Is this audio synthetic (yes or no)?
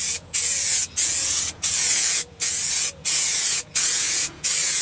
yes